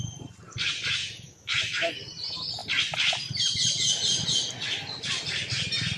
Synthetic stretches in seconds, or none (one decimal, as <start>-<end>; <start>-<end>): 1.0-1.9